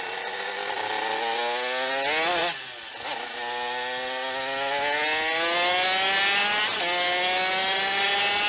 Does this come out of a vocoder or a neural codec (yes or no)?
no